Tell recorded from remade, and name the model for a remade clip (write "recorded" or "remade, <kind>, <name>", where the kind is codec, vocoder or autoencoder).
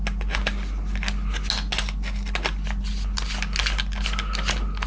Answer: recorded